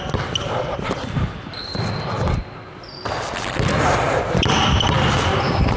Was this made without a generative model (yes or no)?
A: yes